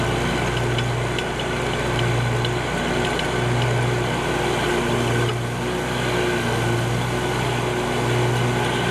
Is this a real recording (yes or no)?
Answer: yes